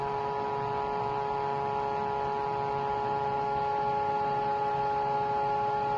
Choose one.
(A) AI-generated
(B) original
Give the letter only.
B